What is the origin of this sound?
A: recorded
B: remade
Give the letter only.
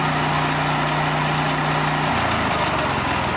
A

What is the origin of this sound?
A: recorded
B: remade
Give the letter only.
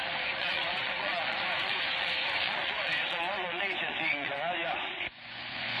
B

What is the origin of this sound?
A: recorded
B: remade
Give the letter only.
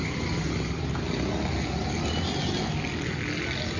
A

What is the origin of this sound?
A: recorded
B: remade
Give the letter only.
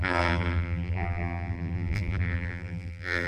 B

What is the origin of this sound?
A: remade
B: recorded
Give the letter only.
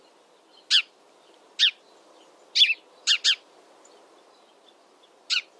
B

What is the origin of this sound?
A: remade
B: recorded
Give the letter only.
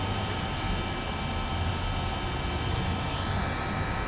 B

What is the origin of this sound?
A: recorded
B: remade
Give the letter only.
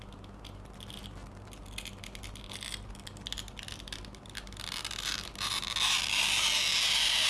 A